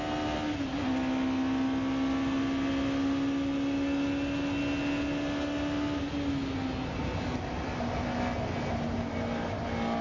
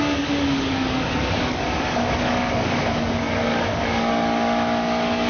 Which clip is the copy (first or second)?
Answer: second